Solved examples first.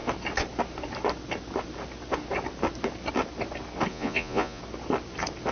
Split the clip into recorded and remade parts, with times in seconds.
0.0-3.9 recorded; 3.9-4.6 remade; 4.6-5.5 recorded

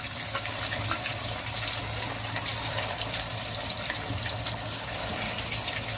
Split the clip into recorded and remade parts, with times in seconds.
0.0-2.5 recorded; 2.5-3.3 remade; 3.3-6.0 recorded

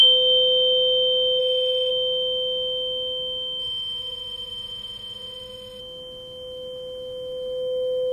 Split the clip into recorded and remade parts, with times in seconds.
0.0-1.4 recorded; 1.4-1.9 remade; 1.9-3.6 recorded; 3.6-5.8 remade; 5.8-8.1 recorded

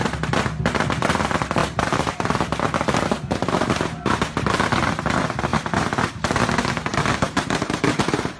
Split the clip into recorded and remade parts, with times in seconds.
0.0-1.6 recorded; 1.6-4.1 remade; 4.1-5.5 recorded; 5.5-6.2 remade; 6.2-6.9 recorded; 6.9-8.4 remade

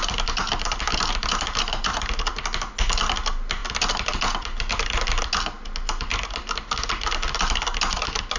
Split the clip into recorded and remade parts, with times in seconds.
0.0-8.4 recorded

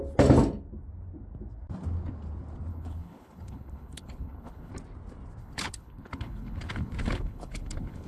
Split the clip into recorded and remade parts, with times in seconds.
0.0-2.7 recorded; 2.7-4.7 remade; 4.7-5.4 recorded; 5.4-8.1 remade

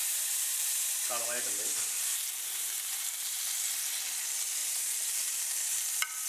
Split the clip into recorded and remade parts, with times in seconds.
0.0-3.4 remade; 3.4-4.6 recorded; 4.6-5.8 remade; 5.8-6.3 recorded

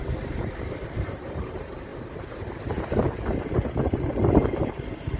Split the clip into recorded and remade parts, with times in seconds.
0.0-0.8 recorded; 0.8-1.9 remade; 1.9-4.3 recorded; 4.3-5.2 remade